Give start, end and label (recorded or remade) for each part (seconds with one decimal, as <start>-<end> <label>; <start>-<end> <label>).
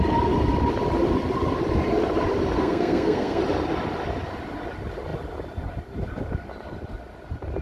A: 0.0-2.6 recorded; 2.6-3.4 remade; 3.4-7.6 recorded